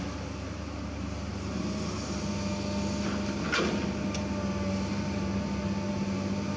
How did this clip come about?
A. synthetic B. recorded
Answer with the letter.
B